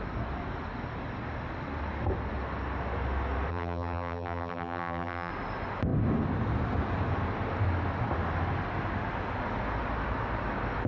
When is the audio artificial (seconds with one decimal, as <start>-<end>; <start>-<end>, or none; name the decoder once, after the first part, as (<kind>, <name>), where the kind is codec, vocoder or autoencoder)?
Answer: 3.5-5.3 (vocoder, BigVGAN v2)